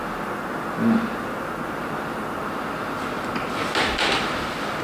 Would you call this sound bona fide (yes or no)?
yes